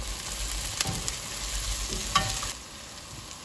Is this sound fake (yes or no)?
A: no